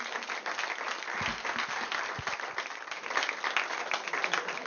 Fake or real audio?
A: real